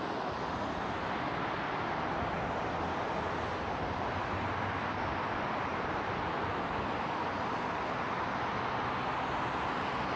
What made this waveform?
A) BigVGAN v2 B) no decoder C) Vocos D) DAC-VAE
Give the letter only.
B